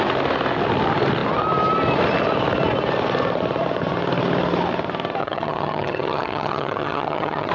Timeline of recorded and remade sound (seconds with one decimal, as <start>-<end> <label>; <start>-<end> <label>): 0.0-5.2 recorded; 5.2-7.5 remade